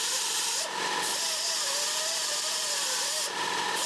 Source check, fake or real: fake